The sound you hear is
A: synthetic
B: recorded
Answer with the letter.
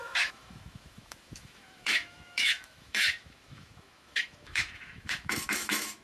A